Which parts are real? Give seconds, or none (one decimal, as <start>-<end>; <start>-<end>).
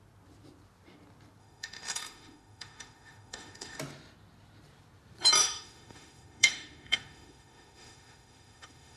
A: 0.0-1.4; 3.8-5.4